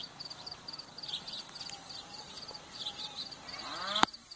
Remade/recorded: recorded